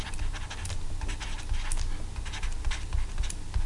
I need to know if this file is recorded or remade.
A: recorded